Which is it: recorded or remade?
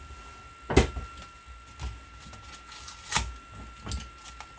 recorded